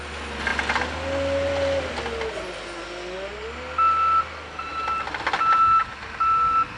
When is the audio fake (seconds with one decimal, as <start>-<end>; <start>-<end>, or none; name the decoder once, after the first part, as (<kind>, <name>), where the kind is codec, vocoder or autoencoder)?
none